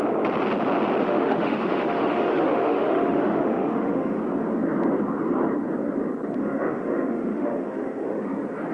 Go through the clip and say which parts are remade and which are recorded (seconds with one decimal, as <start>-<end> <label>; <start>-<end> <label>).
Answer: 0.0-1.0 recorded; 1.0-4.2 remade; 4.2-6.4 recorded; 6.4-8.2 remade; 8.2-8.7 recorded